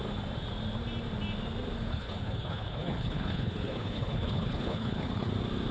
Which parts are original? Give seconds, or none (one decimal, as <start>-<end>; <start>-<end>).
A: 0.0-1.9; 5.3-5.7